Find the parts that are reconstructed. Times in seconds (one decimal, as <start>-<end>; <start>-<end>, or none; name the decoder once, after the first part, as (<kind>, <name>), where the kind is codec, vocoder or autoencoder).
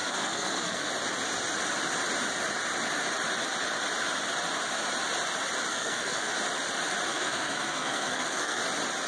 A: 0.0-0.9 (codec, SNAC); 5.7-6.3; 7.1-8.6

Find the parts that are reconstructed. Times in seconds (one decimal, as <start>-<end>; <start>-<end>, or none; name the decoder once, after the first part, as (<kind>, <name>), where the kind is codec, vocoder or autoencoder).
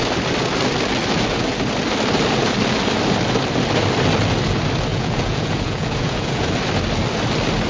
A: 4.9-6.5 (vocoder, Vocos)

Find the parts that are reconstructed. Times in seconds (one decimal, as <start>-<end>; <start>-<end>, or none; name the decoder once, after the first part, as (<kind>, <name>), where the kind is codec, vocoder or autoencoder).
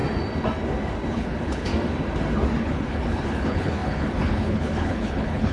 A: 1.1-1.7 (codec, HILCodec); 2.6-5.5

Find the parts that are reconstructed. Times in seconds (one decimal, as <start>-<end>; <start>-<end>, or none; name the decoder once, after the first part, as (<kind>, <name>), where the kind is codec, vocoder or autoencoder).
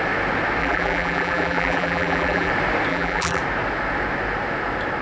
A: 0.6-2.5 (vocoder, BigVGAN v2); 2.9-3.4